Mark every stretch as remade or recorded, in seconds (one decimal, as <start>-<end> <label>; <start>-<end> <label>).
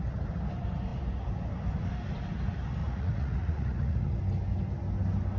0.0-2.8 recorded; 2.8-4.2 remade; 4.2-5.4 recorded